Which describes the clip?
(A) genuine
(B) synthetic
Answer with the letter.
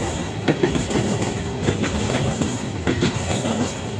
B